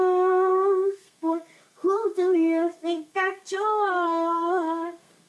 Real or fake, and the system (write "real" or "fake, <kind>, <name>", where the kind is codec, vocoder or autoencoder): fake, codec, SNAC